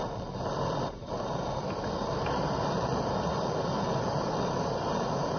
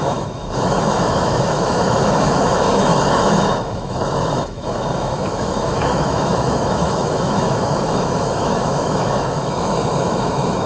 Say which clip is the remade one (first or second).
second